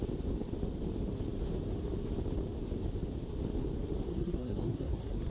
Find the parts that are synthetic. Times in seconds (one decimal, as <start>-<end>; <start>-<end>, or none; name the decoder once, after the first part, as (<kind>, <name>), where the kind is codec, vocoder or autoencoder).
4.1-5.3 (codec, SNAC)